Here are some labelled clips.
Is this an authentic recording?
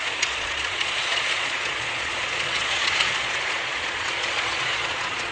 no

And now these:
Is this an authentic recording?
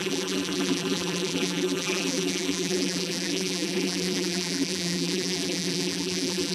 no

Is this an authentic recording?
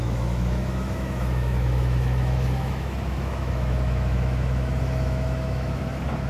no